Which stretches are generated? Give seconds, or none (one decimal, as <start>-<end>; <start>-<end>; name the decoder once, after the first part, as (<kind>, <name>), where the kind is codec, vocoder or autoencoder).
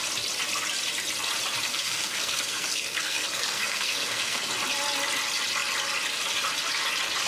1.7-4.5 (codec, SNAC)